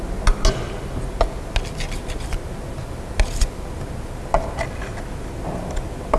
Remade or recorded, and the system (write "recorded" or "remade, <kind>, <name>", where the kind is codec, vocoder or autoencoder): recorded